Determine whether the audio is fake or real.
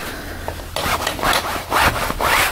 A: real